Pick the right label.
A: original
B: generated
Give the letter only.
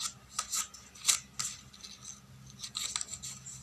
A